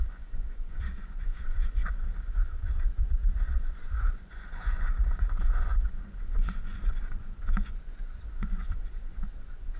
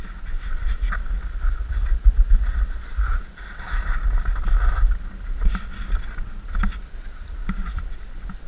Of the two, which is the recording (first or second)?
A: second